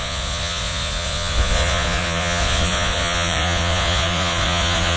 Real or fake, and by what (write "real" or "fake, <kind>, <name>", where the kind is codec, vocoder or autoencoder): fake, vocoder, Vocos